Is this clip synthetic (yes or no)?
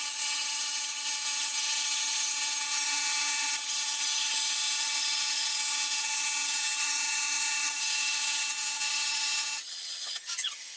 yes